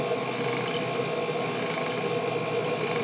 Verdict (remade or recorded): recorded